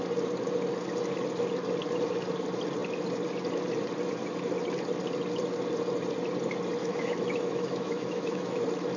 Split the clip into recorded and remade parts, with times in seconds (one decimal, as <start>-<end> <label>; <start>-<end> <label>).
0.0-6.8 recorded; 6.8-8.6 remade; 8.6-9.0 recorded